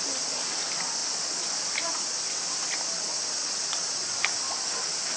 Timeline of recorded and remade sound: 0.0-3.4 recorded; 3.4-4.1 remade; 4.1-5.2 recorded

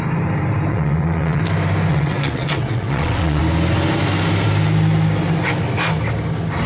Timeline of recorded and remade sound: 0.0-0.7 recorded; 0.7-1.4 remade; 1.4-1.9 recorded; 1.9-3.4 remade; 3.4-6.7 recorded

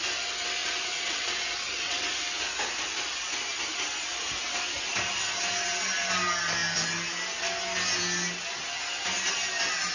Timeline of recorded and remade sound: 0.0-0.6 recorded; 0.6-2.1 remade; 2.1-9.9 recorded

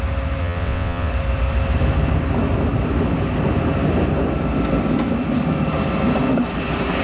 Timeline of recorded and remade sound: 0.0-0.4 recorded; 0.4-1.1 remade; 1.1-7.0 recorded

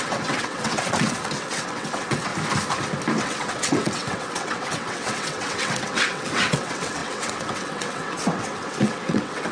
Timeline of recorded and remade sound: 0.0-2.3 remade; 2.3-3.2 recorded; 3.2-9.5 remade

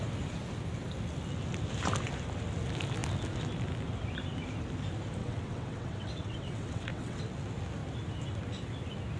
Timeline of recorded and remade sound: 0.0-5.2 recorded; 5.2-7.2 remade; 7.2-9.2 recorded

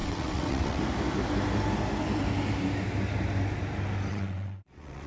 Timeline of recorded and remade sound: 0.0-0.8 remade; 0.8-4.1 recorded; 4.1-5.1 remade